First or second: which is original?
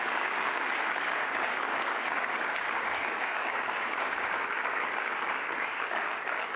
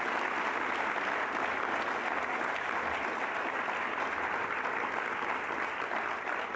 second